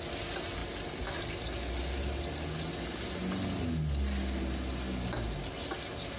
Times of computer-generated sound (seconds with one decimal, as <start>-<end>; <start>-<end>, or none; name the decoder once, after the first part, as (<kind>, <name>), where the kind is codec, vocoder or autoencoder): none